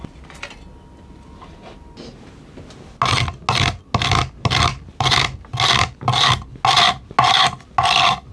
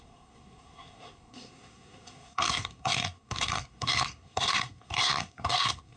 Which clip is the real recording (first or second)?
first